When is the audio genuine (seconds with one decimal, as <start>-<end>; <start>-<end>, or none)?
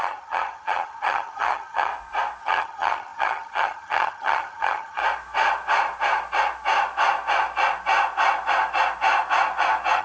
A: 1.9-2.4; 5.0-10.0